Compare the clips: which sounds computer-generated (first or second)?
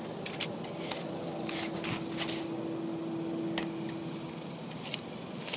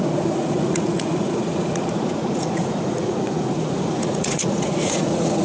second